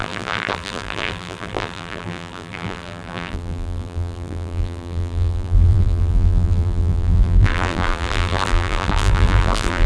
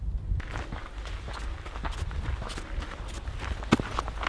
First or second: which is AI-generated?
first